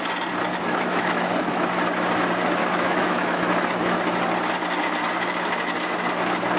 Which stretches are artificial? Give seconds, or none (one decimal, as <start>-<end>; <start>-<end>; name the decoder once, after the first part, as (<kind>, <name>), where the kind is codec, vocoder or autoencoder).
0.5-1.6 (autoencoder, DAC-VAE); 2.6-3.4